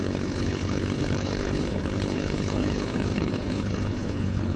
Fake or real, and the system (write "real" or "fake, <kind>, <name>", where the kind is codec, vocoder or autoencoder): fake, codec, HILCodec